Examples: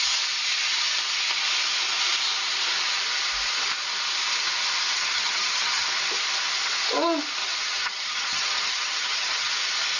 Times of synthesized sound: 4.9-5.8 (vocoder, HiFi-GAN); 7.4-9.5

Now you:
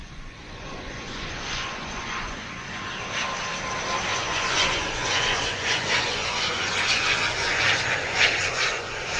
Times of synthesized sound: 0.0-2.9 (vocoder, Vocos); 4.1-9.2

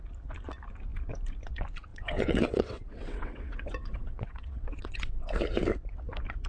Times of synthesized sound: 1.9-5.4 (vocoder, WaveNeXt)

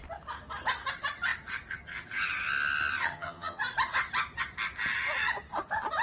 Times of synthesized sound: 3.0-3.6 (vocoder, HiFi-GAN)

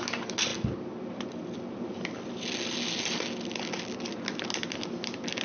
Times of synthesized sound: none